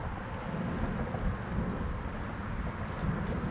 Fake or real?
real